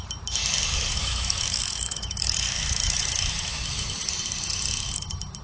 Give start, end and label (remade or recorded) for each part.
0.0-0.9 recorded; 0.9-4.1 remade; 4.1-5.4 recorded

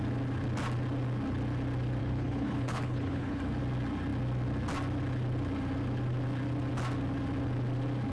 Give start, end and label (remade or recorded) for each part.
0.0-2.0 recorded; 2.0-3.4 remade; 3.4-8.1 recorded

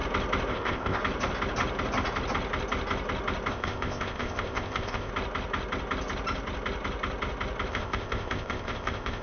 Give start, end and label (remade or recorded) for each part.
0.0-0.5 recorded; 0.5-1.0 remade; 1.0-3.5 recorded; 3.5-5.1 remade; 5.1-7.7 recorded; 7.7-9.2 remade